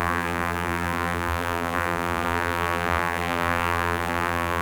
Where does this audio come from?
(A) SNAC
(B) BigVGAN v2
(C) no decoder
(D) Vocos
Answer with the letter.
B